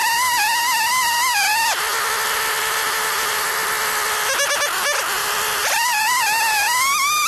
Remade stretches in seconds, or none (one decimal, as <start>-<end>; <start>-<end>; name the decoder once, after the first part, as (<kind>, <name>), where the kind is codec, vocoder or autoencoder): 2.6-3.5 (vocoder, BigVGAN v2); 5.6-6.2